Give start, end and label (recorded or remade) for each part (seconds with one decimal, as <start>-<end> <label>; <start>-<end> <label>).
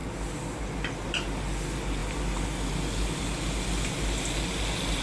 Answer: 0.0-5.0 recorded